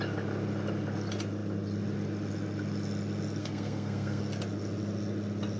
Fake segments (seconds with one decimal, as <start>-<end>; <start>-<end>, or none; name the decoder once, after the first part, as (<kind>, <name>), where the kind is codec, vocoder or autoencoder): 3.4-4.2 (codec, SNAC)